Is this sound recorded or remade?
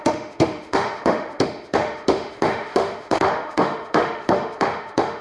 remade